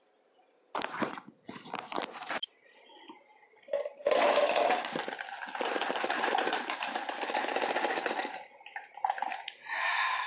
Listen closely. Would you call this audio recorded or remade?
remade